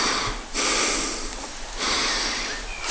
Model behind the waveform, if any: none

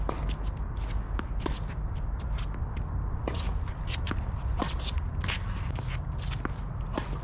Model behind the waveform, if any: none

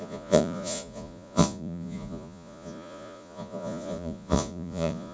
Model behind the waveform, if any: vocoder, Vocos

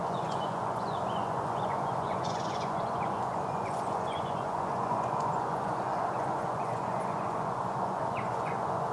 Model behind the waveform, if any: vocoder, Vocos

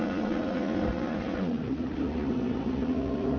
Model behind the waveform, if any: vocoder, Vocos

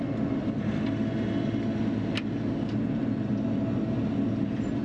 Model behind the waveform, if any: none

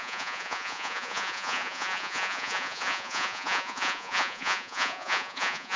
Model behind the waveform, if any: vocoder, Vocos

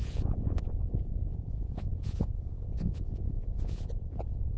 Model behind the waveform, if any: vocoder, Vocos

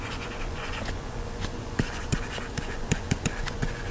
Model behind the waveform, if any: vocoder, Vocos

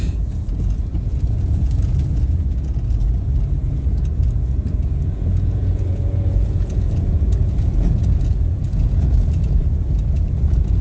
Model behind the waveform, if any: vocoder, Vocos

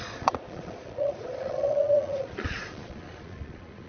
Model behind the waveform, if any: vocoder, Vocos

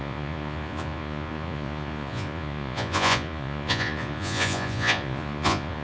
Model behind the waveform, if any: vocoder, Vocos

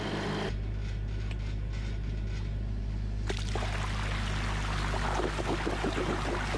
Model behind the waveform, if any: none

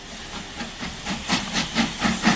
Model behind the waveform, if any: none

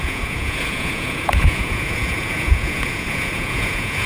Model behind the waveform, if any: vocoder, Vocos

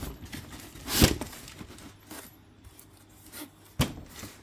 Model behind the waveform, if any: none